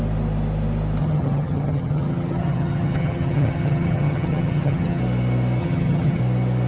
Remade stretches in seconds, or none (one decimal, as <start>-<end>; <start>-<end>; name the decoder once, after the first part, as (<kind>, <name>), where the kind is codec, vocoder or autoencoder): 1.0-5.0 (vocoder, HiFi-GAN); 5.6-6.2